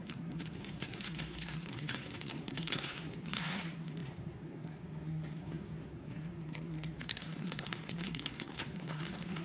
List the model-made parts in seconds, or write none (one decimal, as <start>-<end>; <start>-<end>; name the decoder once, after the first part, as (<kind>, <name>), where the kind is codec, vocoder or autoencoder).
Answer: 0.0-9.4 (codec, SNAC)